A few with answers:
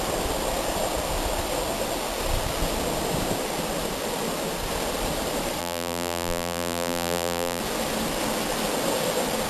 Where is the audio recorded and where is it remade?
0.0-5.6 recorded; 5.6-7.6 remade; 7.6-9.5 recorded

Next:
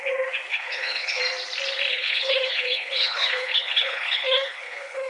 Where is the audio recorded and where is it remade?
0.0-0.5 recorded; 0.5-1.2 remade; 1.2-1.9 recorded; 1.9-5.1 remade

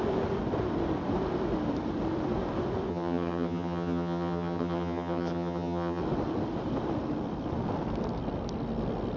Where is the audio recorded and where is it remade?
0.0-2.9 recorded; 2.9-6.0 remade; 6.0-9.2 recorded

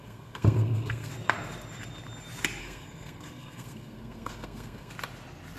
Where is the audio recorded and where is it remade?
0.0-1.1 remade; 1.1-2.6 recorded; 2.6-4.9 remade; 4.9-5.6 recorded

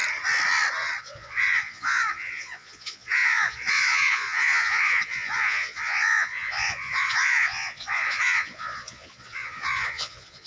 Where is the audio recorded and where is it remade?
0.0-1.0 recorded; 1.0-10.5 remade

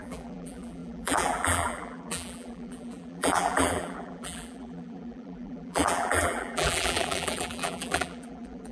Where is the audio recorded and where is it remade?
0.0-8.7 remade

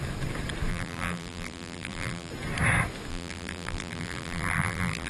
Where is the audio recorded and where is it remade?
0.0-0.7 recorded; 0.7-2.3 remade; 2.3-3.1 recorded; 3.1-5.1 remade

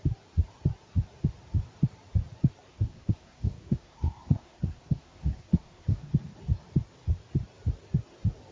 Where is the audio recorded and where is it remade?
0.0-2.7 recorded; 2.7-6.1 remade; 6.1-8.5 recorded